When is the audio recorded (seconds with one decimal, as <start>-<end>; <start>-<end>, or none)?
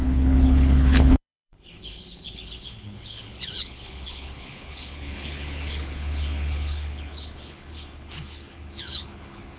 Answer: none